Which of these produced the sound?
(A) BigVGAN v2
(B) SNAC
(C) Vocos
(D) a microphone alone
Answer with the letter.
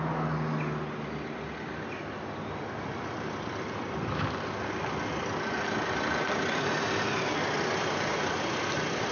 D